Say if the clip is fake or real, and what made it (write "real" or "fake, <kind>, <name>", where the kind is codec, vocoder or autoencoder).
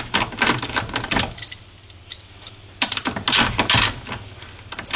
real